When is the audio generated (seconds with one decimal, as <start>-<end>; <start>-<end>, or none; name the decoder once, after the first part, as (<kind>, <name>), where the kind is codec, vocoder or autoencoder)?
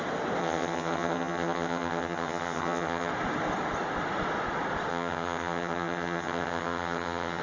0.4-3.1 (vocoder, HiFi-GAN); 4.9-7.4